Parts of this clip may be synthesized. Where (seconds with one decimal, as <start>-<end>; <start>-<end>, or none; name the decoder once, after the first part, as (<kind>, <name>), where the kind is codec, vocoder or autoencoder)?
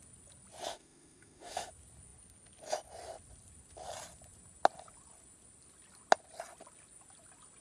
0.7-1.7 (autoencoder, DAC-VAE)